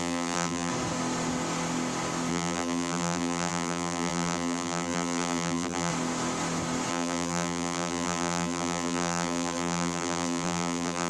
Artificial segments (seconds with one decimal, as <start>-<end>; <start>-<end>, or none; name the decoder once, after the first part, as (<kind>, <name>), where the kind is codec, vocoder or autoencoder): 0.0-0.7 (vocoder, BigVGAN v2); 2.3-5.9; 6.9-11.1